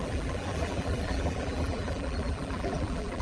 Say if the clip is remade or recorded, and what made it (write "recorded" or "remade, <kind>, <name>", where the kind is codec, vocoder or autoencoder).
remade, vocoder, BigVGAN v2